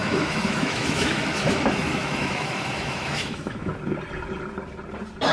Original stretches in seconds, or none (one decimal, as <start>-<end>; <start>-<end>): 3.7-5.3